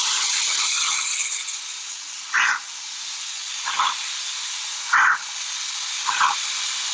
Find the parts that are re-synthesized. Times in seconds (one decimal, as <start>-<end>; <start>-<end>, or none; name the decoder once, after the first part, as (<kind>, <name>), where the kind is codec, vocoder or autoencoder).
none